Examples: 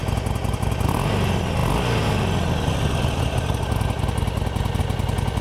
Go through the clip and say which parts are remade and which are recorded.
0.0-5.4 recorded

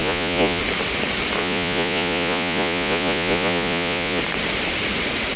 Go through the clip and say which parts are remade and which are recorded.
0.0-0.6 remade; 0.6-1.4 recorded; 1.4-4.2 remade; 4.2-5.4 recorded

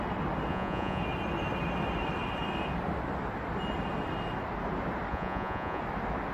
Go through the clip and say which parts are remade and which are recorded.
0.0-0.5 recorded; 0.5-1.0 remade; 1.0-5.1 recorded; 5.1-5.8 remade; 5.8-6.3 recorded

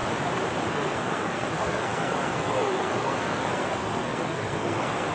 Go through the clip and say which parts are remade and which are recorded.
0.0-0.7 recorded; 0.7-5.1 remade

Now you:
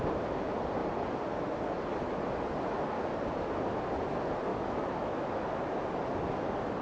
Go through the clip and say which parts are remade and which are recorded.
0.0-4.5 recorded; 4.5-5.8 remade; 5.8-6.8 recorded

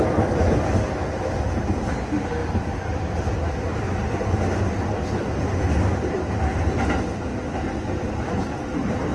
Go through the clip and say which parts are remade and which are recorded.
0.0-9.1 recorded

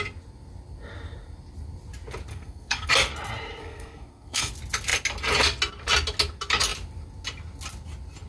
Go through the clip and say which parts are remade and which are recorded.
0.0-2.3 recorded; 2.3-2.9 remade; 2.9-3.6 recorded; 3.6-4.5 remade; 4.5-8.3 recorded

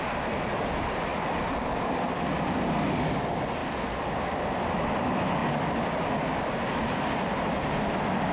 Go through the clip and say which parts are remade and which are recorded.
0.0-1.1 recorded; 1.1-1.8 remade; 1.8-8.3 recorded